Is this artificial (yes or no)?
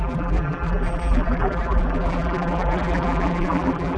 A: yes